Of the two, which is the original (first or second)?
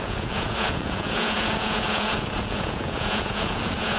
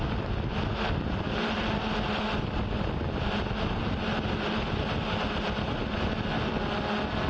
second